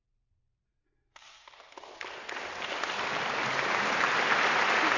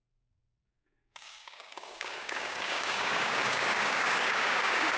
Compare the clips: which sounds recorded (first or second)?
first